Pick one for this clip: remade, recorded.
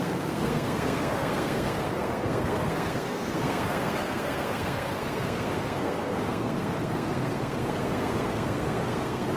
remade